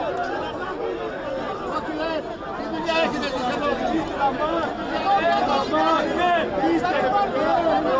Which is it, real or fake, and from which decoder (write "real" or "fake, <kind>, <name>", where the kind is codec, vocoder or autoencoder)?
real